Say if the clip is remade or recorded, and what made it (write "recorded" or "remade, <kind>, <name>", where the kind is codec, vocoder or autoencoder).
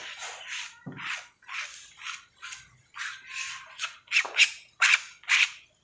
recorded